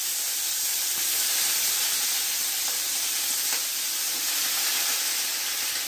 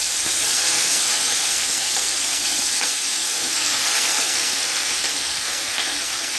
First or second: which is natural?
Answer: first